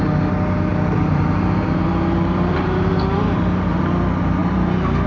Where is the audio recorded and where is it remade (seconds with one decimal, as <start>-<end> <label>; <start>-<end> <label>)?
0.0-0.7 recorded; 0.7-3.8 remade; 3.8-4.4 recorded; 4.4-5.1 remade